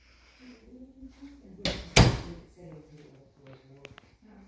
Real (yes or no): yes